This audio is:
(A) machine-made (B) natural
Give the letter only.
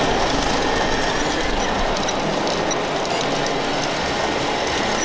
B